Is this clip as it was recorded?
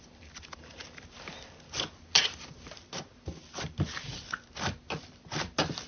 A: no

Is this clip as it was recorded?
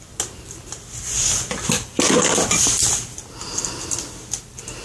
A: yes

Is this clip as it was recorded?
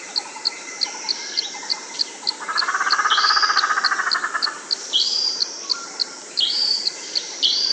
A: no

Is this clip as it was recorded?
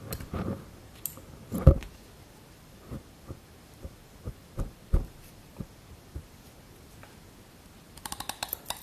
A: no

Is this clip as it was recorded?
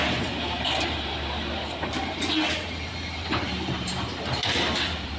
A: no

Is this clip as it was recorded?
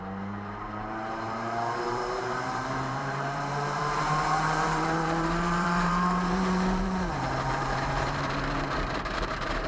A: no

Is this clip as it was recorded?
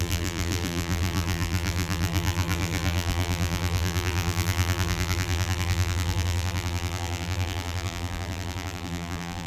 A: no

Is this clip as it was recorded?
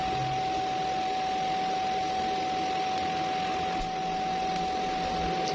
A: yes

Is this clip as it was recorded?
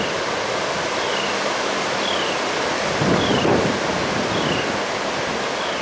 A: yes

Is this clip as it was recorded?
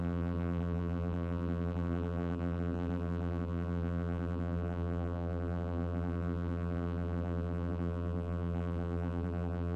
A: no